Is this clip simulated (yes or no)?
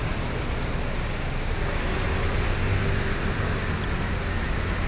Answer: no